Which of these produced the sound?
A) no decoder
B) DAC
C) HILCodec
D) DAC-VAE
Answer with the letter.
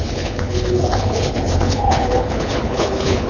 C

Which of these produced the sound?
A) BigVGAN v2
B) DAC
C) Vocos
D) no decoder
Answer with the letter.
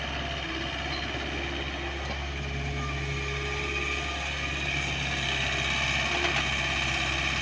D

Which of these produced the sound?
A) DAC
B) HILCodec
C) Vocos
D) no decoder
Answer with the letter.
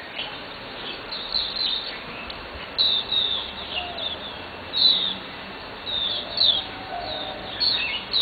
D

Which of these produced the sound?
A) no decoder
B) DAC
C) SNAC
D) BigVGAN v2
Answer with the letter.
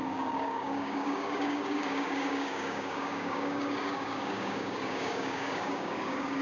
B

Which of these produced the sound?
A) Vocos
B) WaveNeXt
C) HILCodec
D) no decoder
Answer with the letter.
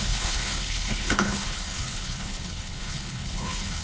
C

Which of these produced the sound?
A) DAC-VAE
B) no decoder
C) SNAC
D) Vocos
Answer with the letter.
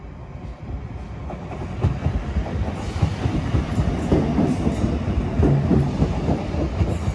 B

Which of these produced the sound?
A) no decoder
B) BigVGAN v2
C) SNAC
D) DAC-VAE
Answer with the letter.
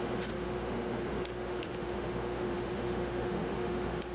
D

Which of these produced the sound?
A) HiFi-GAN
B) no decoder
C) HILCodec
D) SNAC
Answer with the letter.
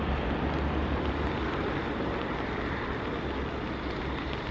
B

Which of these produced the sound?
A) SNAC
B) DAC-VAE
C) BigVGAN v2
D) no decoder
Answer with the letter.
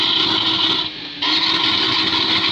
D